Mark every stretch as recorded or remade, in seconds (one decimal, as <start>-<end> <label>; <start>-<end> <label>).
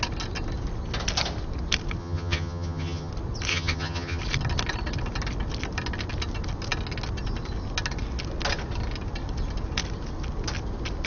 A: 0.0-2.0 recorded; 2.0-3.1 remade; 3.1-3.5 recorded; 3.5-4.2 remade; 4.2-11.1 recorded